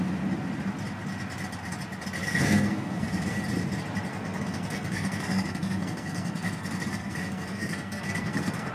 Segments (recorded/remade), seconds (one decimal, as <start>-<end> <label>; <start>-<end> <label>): 0.0-2.2 recorded; 2.2-3.4 remade; 3.4-4.1 recorded; 4.1-8.7 remade